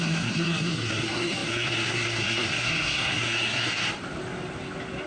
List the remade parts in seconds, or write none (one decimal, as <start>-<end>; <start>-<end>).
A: 0.0-3.8

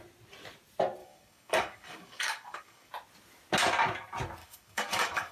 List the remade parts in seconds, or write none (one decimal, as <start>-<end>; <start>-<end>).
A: 1.0-2.9; 4.4-5.3

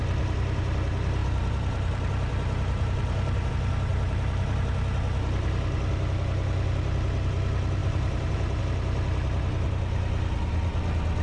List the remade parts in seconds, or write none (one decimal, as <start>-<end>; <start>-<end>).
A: 1.2-3.5; 3.9-4.6; 7.8-8.6

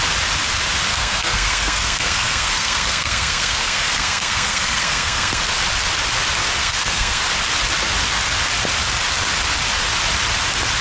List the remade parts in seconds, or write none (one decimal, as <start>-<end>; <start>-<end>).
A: 0.9-5.4; 6.6-7.2

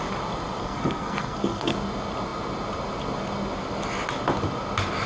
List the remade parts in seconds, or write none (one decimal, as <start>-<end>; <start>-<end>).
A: 0.6-1.7

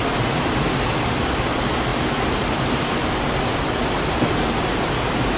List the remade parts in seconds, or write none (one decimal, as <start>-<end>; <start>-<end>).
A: 1.9-3.6

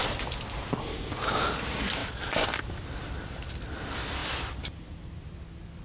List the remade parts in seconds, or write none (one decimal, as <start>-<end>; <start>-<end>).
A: 0.9-1.5

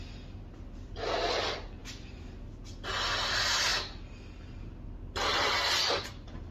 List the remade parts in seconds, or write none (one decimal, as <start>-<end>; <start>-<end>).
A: none